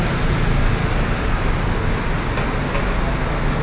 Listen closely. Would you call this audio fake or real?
real